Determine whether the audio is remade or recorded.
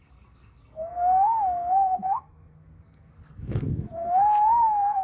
remade